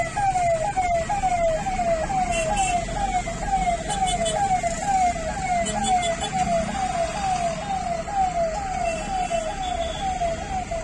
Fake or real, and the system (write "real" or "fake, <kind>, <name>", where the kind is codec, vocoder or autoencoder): real